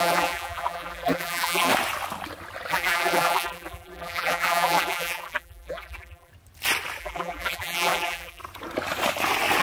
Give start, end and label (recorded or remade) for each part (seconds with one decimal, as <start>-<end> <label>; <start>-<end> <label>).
0.0-1.7 remade; 1.7-2.7 recorded; 2.7-6.3 remade; 6.3-7.0 recorded; 7.0-8.4 remade; 8.4-9.6 recorded